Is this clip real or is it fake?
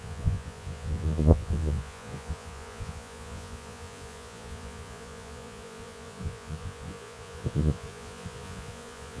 fake